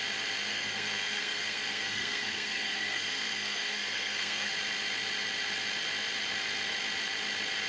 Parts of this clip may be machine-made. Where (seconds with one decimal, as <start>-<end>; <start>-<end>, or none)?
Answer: 0.5-4.5